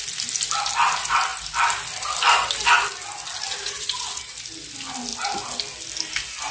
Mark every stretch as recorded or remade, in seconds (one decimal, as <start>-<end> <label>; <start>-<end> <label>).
0.0-3.6 recorded; 3.6-4.2 remade; 4.2-6.5 recorded